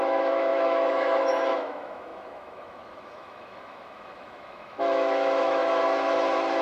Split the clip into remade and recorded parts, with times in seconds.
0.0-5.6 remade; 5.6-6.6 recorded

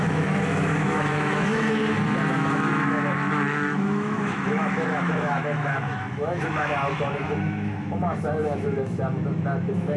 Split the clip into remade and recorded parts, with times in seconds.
0.0-1.8 remade; 1.8-2.3 recorded; 2.3-10.0 remade